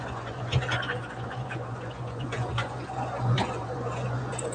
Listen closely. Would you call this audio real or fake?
fake